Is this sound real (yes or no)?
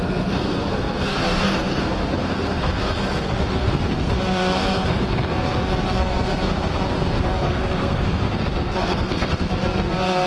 no